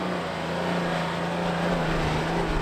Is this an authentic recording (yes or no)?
yes